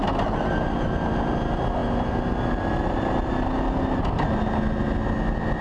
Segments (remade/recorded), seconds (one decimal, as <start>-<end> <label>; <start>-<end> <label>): 0.0-5.6 recorded

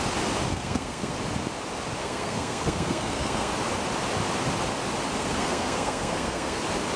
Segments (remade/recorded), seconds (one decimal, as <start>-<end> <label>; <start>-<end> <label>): 0.0-0.5 recorded; 0.5-1.1 remade; 1.1-2.0 recorded; 2.0-3.5 remade; 3.5-5.2 recorded; 5.2-6.6 remade; 6.6-7.0 recorded

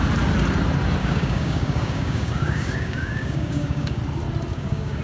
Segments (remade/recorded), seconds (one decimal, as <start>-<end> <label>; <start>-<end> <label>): 0.0-1.0 recorded; 1.0-4.0 remade; 4.0-4.5 recorded; 4.5-5.0 remade

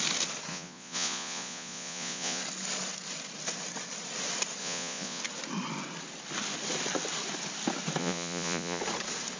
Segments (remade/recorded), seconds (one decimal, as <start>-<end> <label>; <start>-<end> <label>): 0.0-0.5 recorded; 0.5-2.4 remade; 2.4-4.6 recorded; 4.6-5.2 remade; 5.2-8.0 recorded; 8.0-8.8 remade; 8.8-9.4 recorded

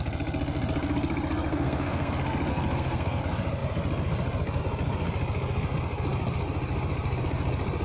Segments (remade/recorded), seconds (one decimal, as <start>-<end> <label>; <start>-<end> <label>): 0.0-1.5 recorded; 1.5-2.1 remade; 2.1-2.5 recorded; 2.5-3.2 remade; 3.2-7.8 recorded

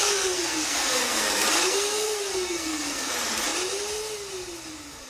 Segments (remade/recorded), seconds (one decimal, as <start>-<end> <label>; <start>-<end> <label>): 0.0-3.1 remade; 3.1-5.1 recorded